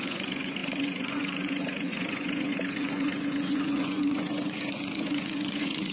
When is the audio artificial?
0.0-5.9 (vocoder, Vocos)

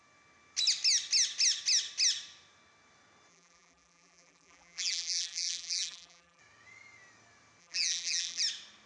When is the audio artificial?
3.3-6.4 (vocoder, BigVGAN v2); 7.6-8.4

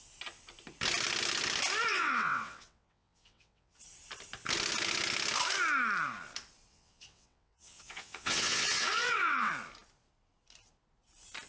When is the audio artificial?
1.9-3.8 (vocoder, WaveNeXt); 6.7-9.5

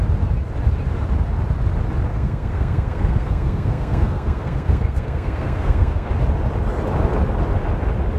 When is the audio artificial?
2.1-6.1 (codec, SNAC)